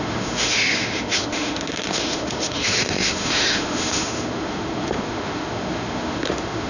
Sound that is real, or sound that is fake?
fake